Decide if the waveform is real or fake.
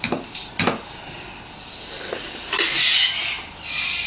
real